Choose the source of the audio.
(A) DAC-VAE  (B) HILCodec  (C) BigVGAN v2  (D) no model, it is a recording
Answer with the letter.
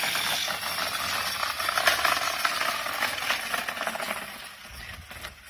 D